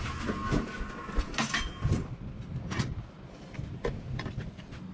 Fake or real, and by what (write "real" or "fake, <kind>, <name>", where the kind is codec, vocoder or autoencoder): real